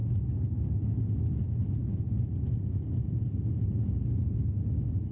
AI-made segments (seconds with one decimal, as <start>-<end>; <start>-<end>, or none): none